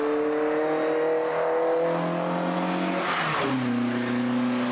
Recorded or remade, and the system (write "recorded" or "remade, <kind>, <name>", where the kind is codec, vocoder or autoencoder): recorded